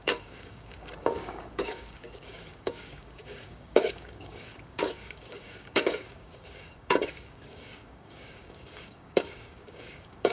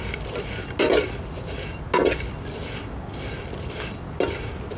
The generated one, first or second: first